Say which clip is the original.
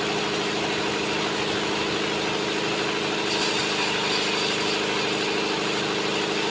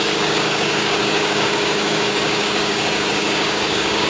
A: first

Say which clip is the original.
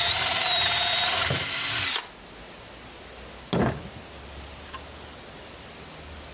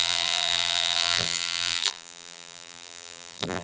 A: first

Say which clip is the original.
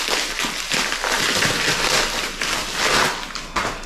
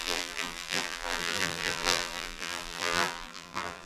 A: first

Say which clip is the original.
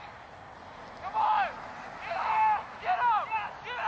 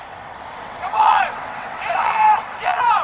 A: first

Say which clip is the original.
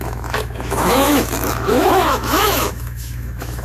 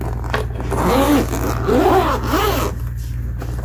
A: second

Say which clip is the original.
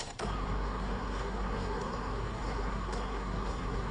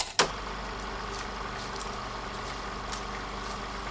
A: second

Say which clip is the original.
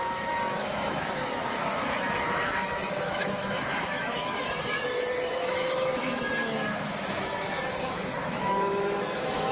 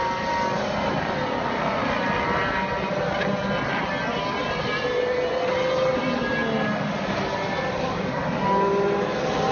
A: second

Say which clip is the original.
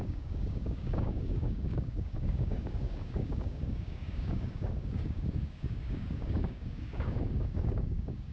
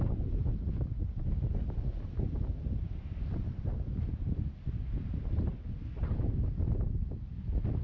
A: second